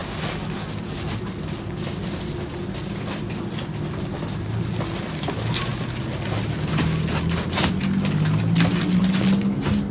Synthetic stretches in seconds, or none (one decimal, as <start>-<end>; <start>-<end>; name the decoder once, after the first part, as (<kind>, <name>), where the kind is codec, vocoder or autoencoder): none